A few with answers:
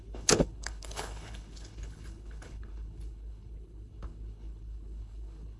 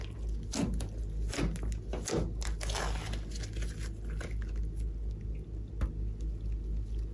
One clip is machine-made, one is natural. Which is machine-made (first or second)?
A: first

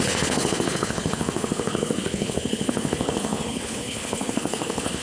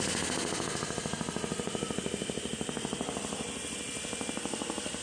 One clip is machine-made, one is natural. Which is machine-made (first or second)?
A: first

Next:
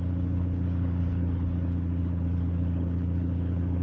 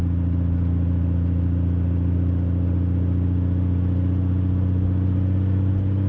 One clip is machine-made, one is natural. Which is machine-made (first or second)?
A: first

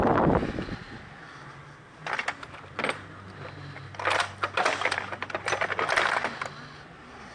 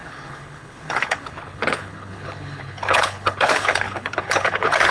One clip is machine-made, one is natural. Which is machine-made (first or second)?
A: second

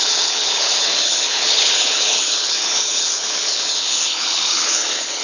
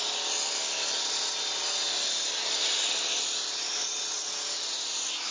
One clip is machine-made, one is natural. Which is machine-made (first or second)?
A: first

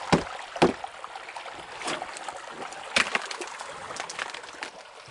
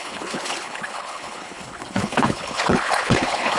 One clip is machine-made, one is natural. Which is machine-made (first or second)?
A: second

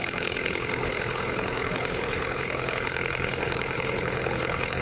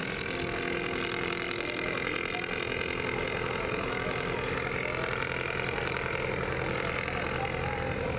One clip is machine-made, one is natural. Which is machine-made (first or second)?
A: first